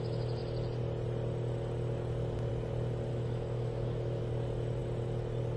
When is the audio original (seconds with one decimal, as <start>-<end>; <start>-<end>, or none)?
0.0-3.1; 4.2-5.6